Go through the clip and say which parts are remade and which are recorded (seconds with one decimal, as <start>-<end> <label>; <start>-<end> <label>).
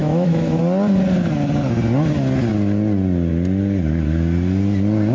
0.0-0.6 remade; 0.6-5.1 recorded